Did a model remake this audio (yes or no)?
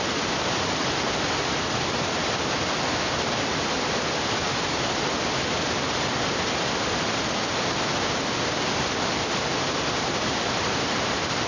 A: yes